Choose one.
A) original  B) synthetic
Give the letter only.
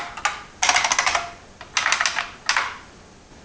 A